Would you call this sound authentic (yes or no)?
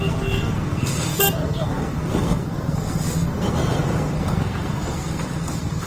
no